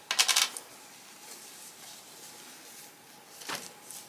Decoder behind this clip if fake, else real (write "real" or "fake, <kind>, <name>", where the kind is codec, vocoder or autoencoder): real